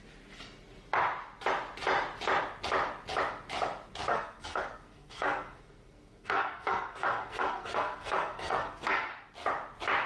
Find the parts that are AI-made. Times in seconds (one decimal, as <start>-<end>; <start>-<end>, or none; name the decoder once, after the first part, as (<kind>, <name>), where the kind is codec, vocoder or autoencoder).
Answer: 4.1-9.1 (codec, SNAC)